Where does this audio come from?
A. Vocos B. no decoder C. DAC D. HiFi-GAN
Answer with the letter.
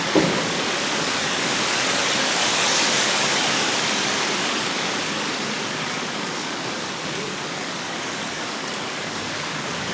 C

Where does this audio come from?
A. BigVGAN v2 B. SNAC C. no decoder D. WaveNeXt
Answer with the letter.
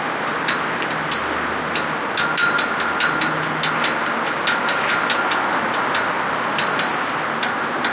C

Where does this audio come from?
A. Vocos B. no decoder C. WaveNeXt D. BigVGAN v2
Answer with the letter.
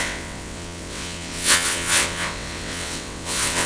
C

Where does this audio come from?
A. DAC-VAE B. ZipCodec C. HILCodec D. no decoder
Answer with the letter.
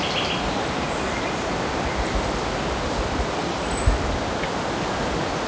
D